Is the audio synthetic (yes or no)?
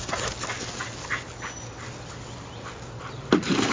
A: no